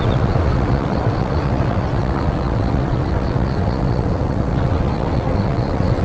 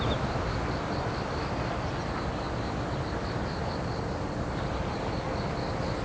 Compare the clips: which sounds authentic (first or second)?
second